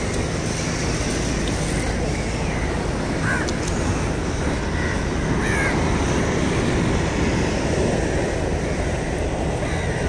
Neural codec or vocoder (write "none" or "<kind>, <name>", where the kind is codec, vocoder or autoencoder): none